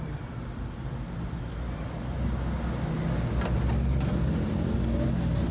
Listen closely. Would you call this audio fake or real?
real